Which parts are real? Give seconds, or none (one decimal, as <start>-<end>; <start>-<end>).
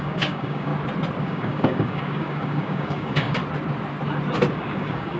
0.7-1.2; 3.4-4.5